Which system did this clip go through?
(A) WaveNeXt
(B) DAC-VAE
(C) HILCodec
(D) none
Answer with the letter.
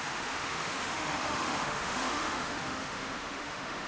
B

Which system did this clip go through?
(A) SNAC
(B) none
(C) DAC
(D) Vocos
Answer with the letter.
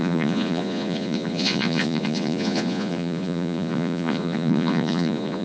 D